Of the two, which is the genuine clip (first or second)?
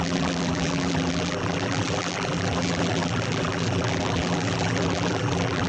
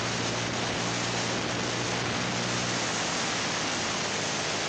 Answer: second